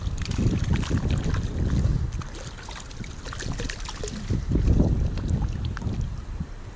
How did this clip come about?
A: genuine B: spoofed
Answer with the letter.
A